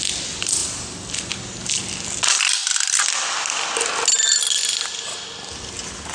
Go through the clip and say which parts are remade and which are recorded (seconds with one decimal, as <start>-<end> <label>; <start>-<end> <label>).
0.0-6.1 recorded